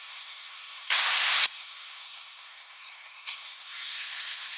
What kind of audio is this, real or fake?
fake